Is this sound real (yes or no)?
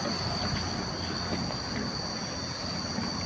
yes